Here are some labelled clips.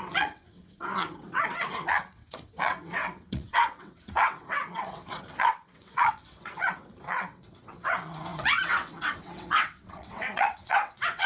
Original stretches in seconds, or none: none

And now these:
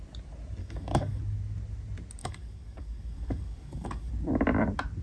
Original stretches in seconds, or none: 0.0-0.6; 1.2-2.2; 4.1-5.0